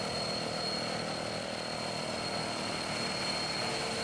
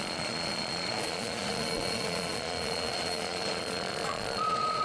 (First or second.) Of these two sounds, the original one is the first